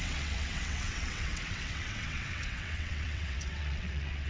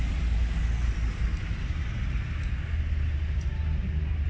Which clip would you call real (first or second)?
second